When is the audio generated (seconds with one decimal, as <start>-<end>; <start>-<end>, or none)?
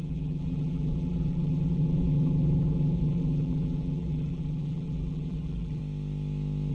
0.0-5.8